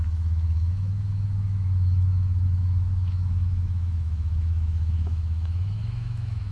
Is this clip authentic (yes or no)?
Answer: no